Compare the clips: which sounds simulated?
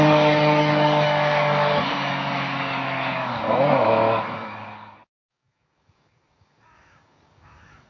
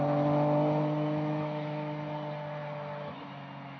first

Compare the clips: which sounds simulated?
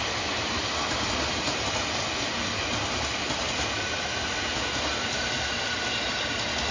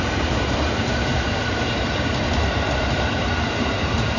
second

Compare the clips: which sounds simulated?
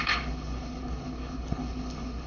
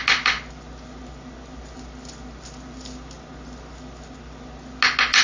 first